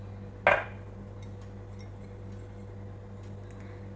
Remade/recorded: recorded